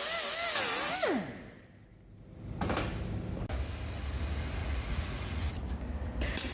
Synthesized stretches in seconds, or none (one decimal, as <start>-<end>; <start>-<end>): 4.6-5.5